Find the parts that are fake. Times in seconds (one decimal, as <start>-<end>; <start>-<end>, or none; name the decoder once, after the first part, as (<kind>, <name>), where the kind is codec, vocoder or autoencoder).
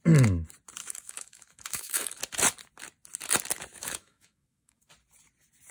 0.8-2.2 (autoencoder, DAC-VAE); 3.7-4.9